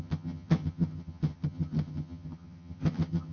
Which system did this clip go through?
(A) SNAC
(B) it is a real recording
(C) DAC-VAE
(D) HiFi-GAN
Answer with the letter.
D